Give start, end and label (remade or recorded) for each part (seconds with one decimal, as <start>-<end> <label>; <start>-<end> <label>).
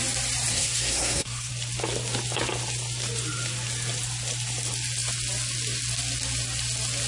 0.0-0.5 recorded; 0.5-1.5 remade; 1.5-7.1 recorded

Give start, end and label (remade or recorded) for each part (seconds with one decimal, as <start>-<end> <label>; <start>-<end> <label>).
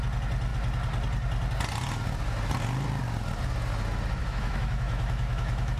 0.0-4.2 recorded; 4.2-5.8 remade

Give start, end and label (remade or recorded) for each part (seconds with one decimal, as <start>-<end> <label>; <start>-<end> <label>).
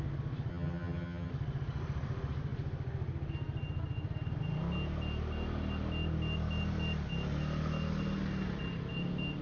0.0-0.5 recorded; 0.5-1.3 remade; 1.3-9.4 recorded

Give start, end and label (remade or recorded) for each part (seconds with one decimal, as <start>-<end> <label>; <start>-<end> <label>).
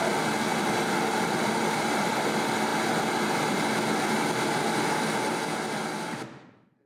0.0-0.5 recorded; 0.5-2.3 remade; 2.3-6.9 recorded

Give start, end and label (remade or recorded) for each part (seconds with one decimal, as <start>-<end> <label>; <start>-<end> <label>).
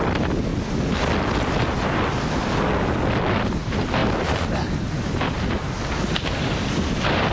0.0-7.3 recorded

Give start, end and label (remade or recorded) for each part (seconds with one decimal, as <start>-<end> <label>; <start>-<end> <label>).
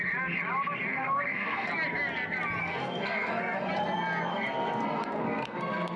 0.0-0.9 recorded; 0.9-1.7 remade; 1.7-2.6 recorded; 2.6-3.7 remade; 3.7-4.3 recorded; 4.3-6.0 remade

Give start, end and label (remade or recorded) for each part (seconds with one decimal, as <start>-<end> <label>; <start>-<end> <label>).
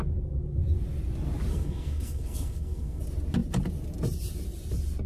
0.0-1.5 recorded; 1.5-3.0 remade; 3.0-5.1 recorded